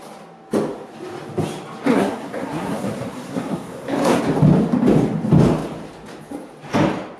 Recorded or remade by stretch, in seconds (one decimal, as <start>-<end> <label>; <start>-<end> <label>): 0.0-1.9 recorded; 1.9-4.2 remade; 4.2-7.2 recorded